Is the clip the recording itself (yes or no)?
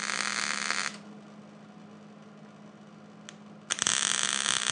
yes